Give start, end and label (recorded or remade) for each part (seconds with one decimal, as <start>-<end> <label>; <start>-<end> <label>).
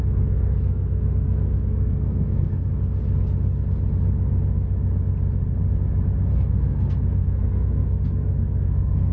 0.0-2.7 remade; 2.7-6.3 recorded; 6.3-9.1 remade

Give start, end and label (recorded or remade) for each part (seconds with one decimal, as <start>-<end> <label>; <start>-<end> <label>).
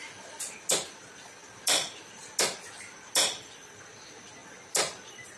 0.0-5.4 recorded